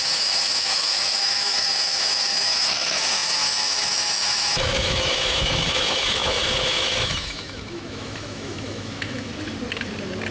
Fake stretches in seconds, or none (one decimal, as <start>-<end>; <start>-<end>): 0.0-9.3